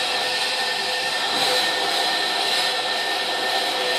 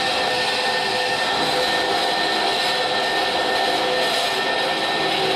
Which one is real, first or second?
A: second